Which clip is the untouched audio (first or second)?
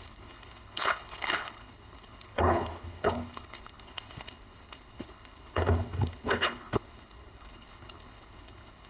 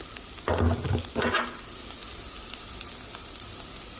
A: second